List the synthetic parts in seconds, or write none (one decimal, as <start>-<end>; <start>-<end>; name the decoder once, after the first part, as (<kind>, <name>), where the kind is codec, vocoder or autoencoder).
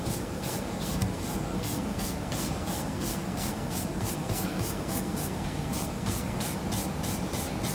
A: 0.0-6.6 (codec, SNAC)